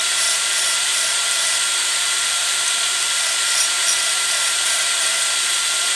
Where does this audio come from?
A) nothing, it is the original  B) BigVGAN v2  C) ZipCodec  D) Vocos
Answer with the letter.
B